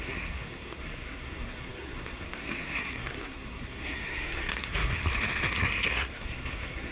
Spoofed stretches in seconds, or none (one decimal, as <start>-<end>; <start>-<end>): 0.0-5.0; 5.5-6.9